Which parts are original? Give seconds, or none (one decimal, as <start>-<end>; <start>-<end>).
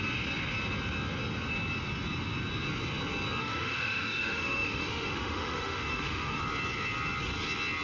0.0-3.4; 6.4-7.8